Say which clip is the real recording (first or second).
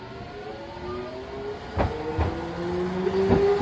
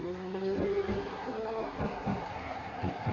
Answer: first